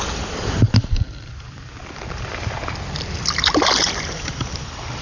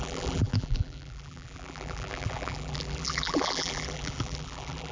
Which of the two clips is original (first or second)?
first